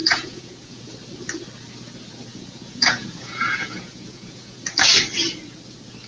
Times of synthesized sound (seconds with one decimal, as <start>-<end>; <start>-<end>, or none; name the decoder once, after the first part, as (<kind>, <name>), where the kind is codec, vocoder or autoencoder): 0.0-0.8 (vocoder, Vocos); 2.3-4.6